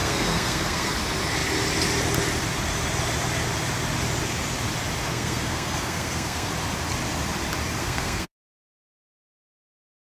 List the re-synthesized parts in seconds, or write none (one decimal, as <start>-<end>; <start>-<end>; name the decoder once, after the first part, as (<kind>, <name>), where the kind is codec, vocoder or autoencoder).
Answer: 0.0-0.9 (codec, SNAC); 5.1-6.5; 7.8-9.0